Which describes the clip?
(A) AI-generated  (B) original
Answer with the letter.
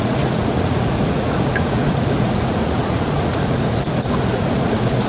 A